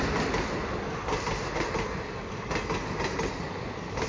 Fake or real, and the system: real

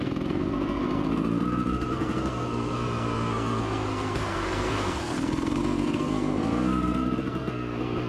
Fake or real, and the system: fake, codec, SNAC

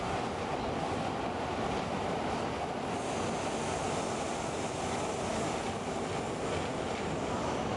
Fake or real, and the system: real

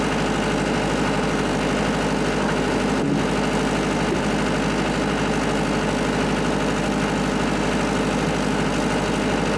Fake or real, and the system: real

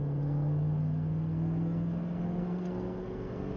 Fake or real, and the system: fake, codec, SNAC